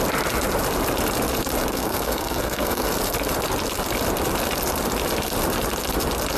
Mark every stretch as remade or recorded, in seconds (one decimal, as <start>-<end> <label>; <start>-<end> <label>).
0.0-1.7 recorded; 1.7-2.9 remade; 2.9-6.4 recorded